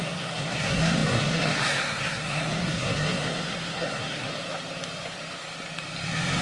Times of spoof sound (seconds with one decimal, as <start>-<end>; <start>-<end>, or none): 0.0-4.3